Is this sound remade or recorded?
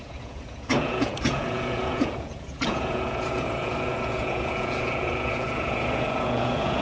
remade